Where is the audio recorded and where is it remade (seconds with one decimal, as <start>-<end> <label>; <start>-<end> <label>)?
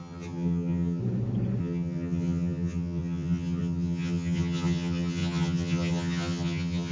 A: 0.0-1.0 remade; 1.0-1.6 recorded; 1.6-6.9 remade